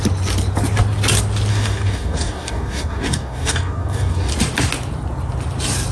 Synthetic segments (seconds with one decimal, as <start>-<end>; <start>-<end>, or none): 1.5-4.3